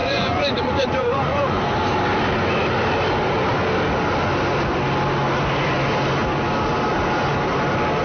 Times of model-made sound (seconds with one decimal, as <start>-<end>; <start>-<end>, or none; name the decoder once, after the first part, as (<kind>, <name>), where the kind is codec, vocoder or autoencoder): 0.0-1.6 (vocoder, Vocos)

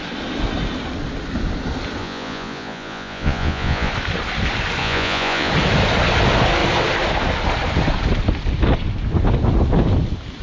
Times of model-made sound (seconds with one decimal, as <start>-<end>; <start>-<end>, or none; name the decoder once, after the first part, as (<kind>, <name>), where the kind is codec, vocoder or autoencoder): 2.0-3.9 (vocoder, Vocos); 4.8-5.5

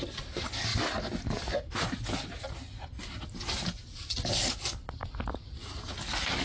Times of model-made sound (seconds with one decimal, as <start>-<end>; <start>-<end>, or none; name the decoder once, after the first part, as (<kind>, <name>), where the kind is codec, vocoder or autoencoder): none